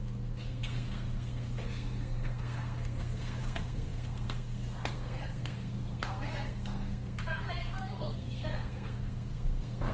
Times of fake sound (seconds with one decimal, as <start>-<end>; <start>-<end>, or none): 0.0-9.9